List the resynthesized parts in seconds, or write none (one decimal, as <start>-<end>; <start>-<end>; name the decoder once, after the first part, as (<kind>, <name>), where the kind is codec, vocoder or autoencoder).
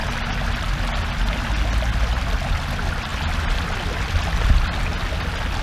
none